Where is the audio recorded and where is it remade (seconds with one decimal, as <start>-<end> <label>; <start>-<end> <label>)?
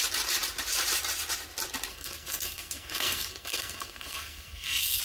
0.0-1.9 recorded; 1.9-5.0 remade